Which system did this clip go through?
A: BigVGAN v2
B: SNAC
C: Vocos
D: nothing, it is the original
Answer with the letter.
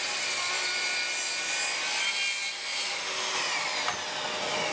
A